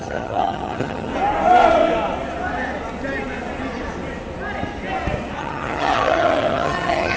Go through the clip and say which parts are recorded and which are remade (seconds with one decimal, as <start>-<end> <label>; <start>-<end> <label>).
0.0-1.1 remade; 1.1-5.4 recorded; 5.4-7.2 remade